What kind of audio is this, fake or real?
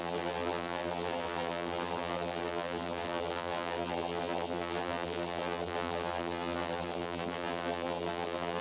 fake